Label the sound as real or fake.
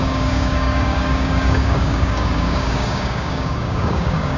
fake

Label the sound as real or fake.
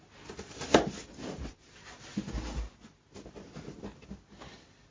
real